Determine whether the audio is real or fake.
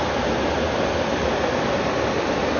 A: real